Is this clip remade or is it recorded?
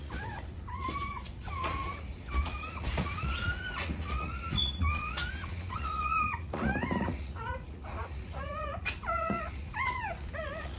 remade